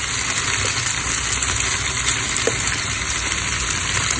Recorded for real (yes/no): no